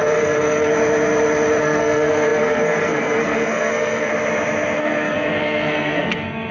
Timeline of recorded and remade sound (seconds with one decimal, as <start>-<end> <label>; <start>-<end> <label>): 0.0-0.7 remade; 0.7-1.6 recorded; 1.6-4.1 remade; 4.1-4.8 recorded; 4.8-6.5 remade